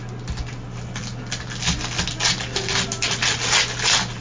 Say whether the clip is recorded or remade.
recorded